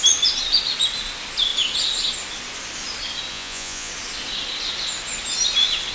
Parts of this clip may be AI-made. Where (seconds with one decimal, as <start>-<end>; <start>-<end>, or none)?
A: 3.3-3.9